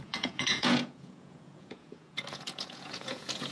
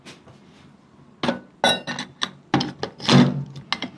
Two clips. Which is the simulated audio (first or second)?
first